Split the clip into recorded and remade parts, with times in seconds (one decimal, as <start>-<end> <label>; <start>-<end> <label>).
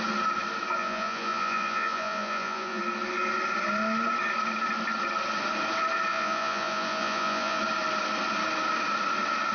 0.0-0.8 recorded; 0.8-2.8 remade; 2.8-6.1 recorded; 6.1-7.6 remade; 7.6-9.5 recorded